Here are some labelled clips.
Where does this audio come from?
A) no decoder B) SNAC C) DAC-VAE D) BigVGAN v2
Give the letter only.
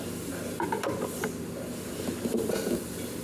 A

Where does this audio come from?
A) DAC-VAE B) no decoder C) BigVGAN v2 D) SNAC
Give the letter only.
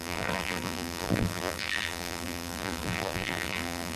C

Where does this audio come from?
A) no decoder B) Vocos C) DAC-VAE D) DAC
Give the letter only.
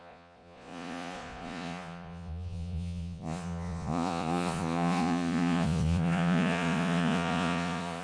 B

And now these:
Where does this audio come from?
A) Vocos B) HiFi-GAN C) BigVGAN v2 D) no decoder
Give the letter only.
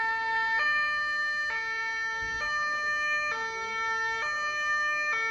D